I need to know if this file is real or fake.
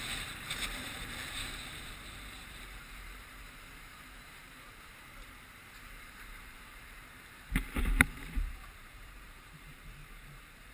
fake